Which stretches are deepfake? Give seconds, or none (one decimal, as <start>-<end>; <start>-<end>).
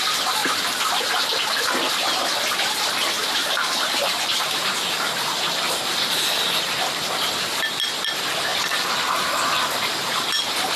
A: 3.2-6.5